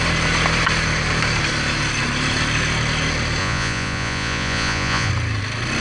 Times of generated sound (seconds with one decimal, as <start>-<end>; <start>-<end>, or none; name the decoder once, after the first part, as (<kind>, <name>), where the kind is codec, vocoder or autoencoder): 3.4-5.1 (vocoder, Vocos)